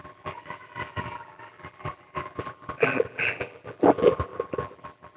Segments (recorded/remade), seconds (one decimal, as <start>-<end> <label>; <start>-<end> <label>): 0.0-5.2 remade